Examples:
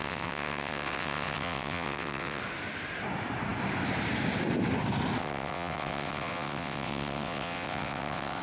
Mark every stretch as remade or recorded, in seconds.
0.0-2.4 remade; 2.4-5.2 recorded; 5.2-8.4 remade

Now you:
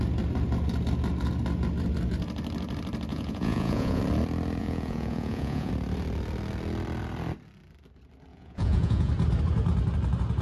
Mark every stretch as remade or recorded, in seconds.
0.0-3.1 recorded; 3.1-4.0 remade; 4.0-4.6 recorded; 4.6-5.7 remade; 5.7-8.3 recorded; 8.3-9.1 remade; 9.1-10.4 recorded

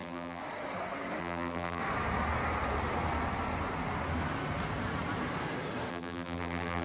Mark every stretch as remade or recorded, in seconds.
0.0-0.4 remade; 0.4-1.2 recorded; 1.2-1.8 remade; 1.8-5.9 recorded; 5.9-6.8 remade

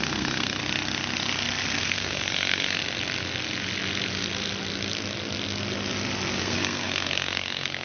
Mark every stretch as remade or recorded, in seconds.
0.0-0.6 remade; 0.6-1.8 recorded; 1.8-2.8 remade; 2.8-6.4 recorded; 6.4-7.8 remade

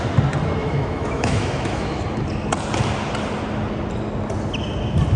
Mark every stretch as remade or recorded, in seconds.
0.0-0.6 recorded; 0.6-2.0 remade; 2.0-5.2 recorded

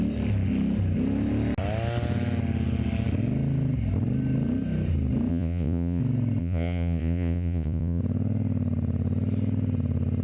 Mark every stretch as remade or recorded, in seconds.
0.0-5.3 recorded; 5.3-6.0 remade; 6.0-6.4 recorded; 6.4-8.0 remade; 8.0-10.2 recorded